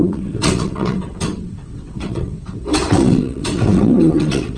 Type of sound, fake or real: fake